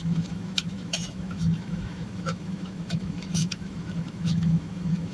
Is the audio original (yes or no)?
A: no